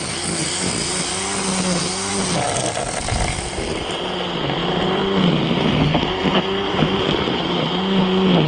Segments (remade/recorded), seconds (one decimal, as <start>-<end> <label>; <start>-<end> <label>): 0.0-4.6 recorded; 4.6-7.8 remade; 7.8-8.5 recorded